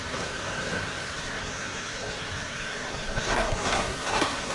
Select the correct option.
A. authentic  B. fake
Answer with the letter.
B